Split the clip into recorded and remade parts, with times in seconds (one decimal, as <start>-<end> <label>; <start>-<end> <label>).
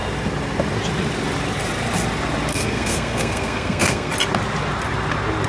0.0-2.5 recorded; 2.5-4.1 remade; 4.1-5.5 recorded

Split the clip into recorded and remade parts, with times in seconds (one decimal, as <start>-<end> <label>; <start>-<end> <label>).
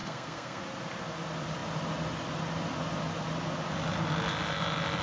0.0-0.6 remade; 0.6-5.0 recorded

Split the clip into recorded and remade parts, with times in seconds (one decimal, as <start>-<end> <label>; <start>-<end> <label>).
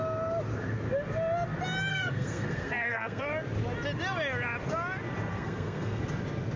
0.0-1.9 recorded; 1.9-3.2 remade; 3.2-5.3 recorded; 5.3-6.0 remade; 6.0-6.6 recorded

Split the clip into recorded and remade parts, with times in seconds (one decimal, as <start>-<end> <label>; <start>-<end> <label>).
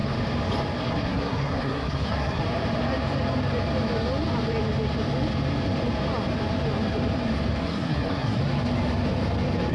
0.0-0.8 recorded; 0.8-2.4 remade; 2.4-7.6 recorded; 7.6-8.4 remade; 8.4-9.7 recorded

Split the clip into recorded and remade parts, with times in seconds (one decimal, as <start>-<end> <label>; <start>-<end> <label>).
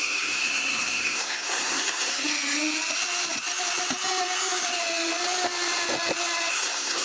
0.0-2.3 remade; 2.3-6.5 recorded; 6.5-7.0 remade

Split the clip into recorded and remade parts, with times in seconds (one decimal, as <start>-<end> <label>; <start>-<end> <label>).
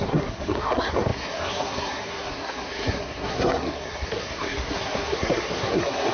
0.0-6.1 remade